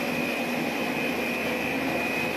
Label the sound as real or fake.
real